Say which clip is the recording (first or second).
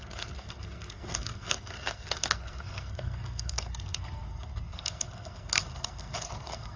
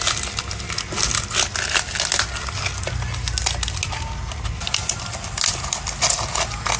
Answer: second